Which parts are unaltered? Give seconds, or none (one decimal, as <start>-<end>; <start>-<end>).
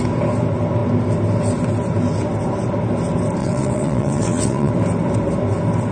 0.0-3.4; 4.7-5.9